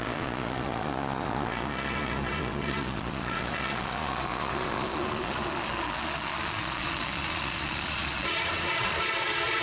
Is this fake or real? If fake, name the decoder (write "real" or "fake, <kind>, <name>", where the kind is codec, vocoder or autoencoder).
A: fake, vocoder, Vocos